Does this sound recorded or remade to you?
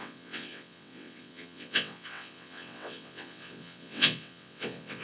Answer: remade